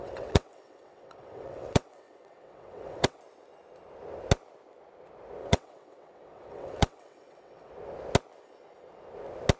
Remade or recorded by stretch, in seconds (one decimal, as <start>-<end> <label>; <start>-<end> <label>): 0.0-3.2 remade; 3.2-5.4 recorded; 5.4-7.7 remade; 7.7-9.6 recorded